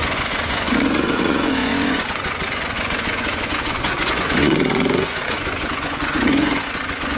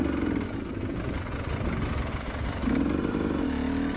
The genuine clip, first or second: second